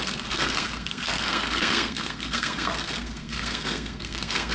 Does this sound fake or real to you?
fake